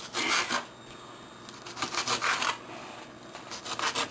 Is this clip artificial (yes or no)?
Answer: no